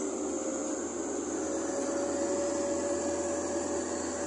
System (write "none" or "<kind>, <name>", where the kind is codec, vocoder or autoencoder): none